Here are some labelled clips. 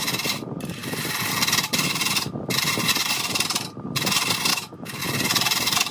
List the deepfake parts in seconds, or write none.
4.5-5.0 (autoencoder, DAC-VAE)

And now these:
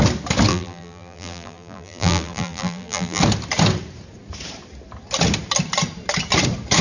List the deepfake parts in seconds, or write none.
0.5-3.2 (vocoder, BigVGAN v2)

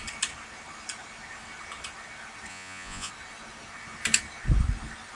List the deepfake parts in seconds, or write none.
2.5-3.1 (vocoder, Vocos)